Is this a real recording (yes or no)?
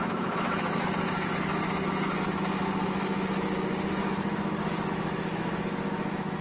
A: no